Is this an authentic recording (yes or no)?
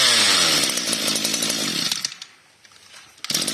yes